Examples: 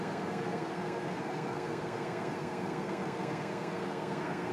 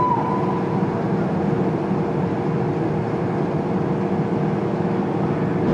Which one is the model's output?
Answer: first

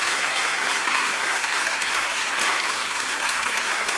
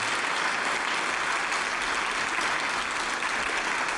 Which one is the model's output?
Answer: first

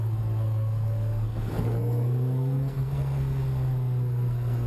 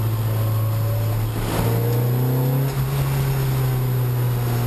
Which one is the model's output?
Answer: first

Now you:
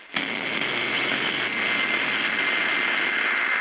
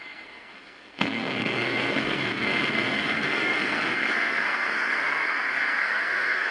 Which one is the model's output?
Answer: second